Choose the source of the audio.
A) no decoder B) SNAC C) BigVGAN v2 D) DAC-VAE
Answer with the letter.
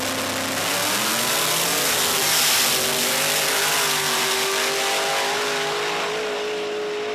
A